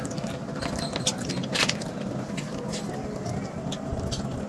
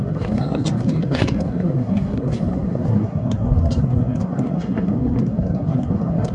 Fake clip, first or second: second